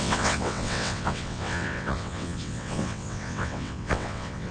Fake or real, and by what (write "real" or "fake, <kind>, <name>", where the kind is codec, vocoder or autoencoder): fake, vocoder, WaveNeXt